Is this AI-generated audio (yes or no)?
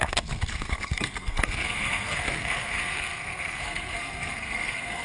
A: yes